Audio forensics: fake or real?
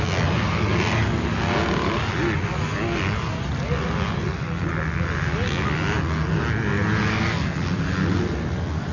real